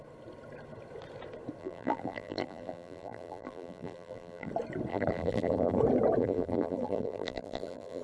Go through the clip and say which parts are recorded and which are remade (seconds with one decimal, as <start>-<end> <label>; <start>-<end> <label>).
0.0-1.6 recorded; 1.6-4.5 remade; 4.5-4.9 recorded; 4.9-5.8 remade; 5.8-6.2 recorded; 6.2-8.0 remade